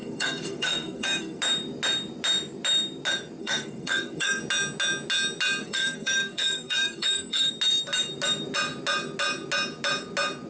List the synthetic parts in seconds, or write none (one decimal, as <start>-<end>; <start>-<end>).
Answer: 0.0-1.4; 3.4-4.4; 5.6-7.5